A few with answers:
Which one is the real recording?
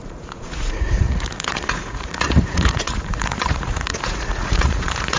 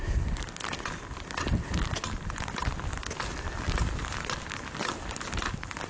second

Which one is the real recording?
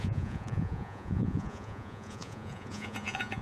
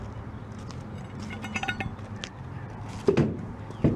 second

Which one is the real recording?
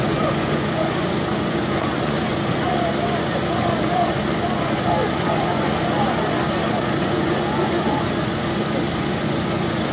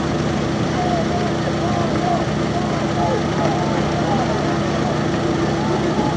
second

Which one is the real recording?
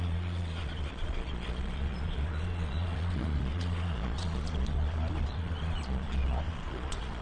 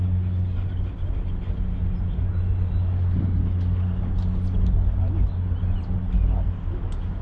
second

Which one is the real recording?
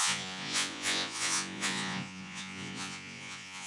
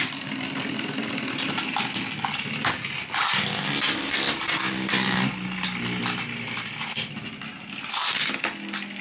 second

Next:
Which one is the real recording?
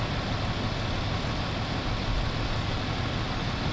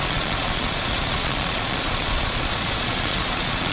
first